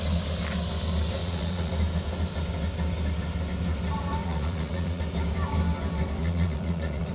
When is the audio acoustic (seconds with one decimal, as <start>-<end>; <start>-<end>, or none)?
0.0-1.2; 1.7-4.2; 5.0-6.2